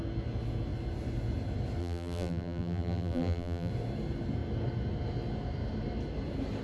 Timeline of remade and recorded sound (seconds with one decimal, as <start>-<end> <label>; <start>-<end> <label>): 0.0-1.8 recorded; 1.8-3.7 remade; 3.7-6.6 recorded